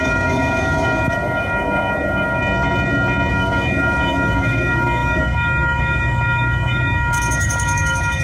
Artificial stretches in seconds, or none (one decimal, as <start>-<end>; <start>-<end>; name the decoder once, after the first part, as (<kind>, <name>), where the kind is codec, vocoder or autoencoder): 0.0-2.4 (codec, DAC); 3.3-8.2

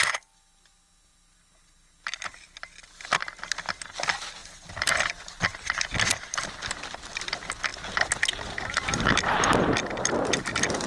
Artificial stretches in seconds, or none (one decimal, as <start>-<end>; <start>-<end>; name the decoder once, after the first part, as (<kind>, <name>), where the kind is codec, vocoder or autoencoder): 4.4-7.2 (vocoder, BigVGAN v2)

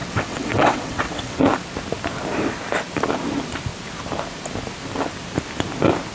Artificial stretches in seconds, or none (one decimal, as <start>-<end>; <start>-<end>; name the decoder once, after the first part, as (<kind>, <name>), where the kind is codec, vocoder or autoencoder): 0.0-1.4 (vocoder, WaveNeXt)

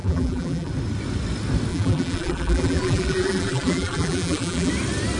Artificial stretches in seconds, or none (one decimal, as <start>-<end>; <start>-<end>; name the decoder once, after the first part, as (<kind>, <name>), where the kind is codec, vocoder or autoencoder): 0.0-0.7 (vocoder, BigVGAN v2); 1.7-4.7

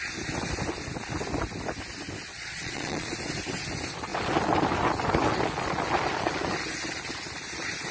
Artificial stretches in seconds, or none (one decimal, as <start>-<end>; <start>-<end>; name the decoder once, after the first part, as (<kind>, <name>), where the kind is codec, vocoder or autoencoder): 2.3-3.1 (vocoder, Vocos)

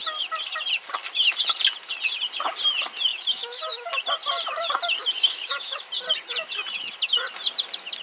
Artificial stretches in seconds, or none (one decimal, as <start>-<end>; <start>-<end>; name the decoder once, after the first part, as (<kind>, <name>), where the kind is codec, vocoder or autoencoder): 3.1-3.9 (autoencoder, DAC-VAE); 5.0-5.9

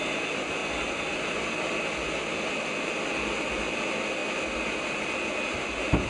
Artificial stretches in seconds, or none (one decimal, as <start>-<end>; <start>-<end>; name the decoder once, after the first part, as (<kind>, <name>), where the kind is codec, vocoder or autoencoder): none